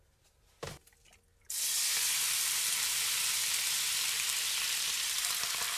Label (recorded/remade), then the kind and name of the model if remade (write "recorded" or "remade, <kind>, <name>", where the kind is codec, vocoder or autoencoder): recorded